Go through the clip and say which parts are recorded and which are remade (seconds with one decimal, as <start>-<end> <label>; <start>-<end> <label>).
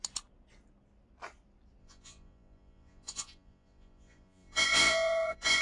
0.0-1.8 recorded; 1.8-5.6 remade